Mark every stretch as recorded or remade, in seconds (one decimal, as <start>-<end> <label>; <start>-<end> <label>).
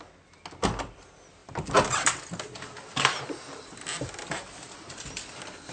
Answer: 0.0-5.7 recorded